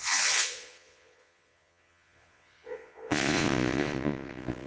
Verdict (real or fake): fake